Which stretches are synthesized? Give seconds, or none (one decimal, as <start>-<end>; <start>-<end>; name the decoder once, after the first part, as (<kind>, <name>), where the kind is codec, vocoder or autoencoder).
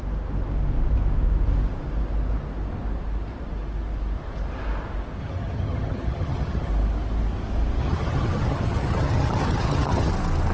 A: 5.2-6.7 (vocoder, HiFi-GAN); 7.8-10.1